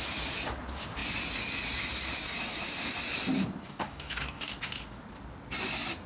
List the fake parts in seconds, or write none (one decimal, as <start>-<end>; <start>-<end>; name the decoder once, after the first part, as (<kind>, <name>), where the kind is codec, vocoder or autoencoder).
3.6-4.5 (codec, DAC)